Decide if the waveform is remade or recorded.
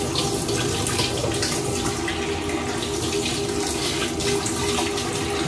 recorded